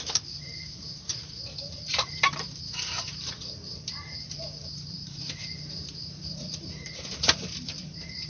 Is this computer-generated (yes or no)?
yes